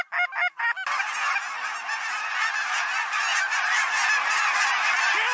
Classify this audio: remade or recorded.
recorded